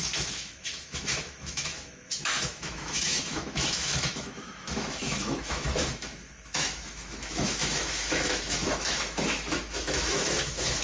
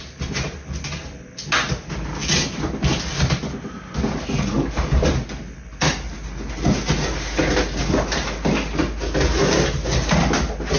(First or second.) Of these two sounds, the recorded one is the second